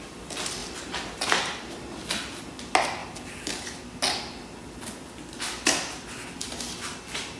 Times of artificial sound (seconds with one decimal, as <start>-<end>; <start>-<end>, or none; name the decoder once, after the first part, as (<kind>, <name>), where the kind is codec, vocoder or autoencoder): 0.6-2.0 (vocoder, BigVGAN v2); 3.0-3.6